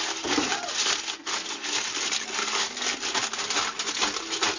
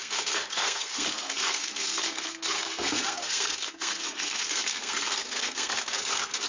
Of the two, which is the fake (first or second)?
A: second